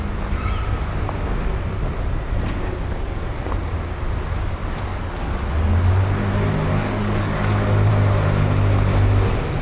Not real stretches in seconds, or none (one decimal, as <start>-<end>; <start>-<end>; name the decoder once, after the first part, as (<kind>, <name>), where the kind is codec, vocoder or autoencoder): 4.9-5.5 (codec, DAC); 6.7-7.9